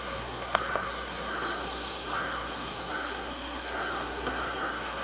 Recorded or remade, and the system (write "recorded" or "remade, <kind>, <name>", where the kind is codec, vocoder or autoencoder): remade, codec, SNAC